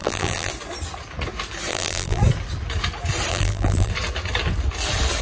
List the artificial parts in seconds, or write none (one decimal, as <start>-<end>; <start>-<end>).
0.0-0.5; 1.7-2.2; 3.3-3.9